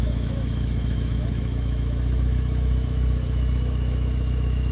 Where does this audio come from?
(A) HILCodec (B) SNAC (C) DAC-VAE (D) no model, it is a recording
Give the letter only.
C